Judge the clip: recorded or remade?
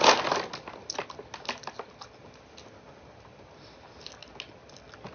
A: recorded